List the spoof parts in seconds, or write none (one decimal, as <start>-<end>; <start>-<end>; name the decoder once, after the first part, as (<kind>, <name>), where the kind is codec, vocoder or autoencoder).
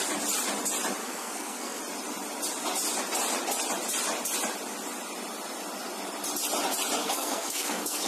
1.0-1.8 (codec, SNAC); 7.0-8.1